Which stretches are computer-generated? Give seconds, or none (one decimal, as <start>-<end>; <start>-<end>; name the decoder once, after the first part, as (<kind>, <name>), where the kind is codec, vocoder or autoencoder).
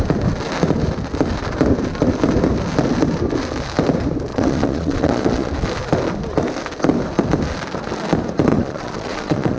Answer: 4.3-5.5 (vocoder, Vocos); 8.5-9.6